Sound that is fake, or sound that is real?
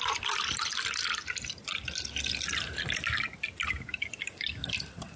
real